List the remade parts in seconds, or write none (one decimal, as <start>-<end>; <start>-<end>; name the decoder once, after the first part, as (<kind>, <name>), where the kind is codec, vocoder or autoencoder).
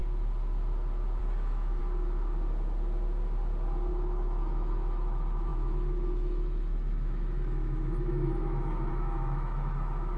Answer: 1.2-1.8 (autoencoder, DAC-VAE); 3.9-10.2